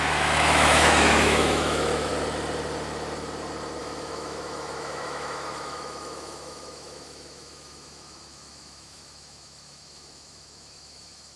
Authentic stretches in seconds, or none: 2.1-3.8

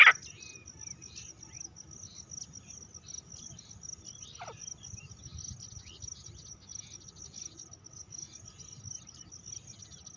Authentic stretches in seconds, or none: 0.0-10.2